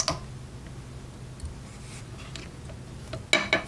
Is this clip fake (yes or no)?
no